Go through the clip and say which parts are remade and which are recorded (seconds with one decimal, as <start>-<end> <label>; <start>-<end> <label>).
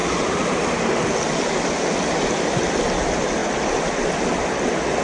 0.0-3.4 recorded; 3.4-4.1 remade; 4.1-5.0 recorded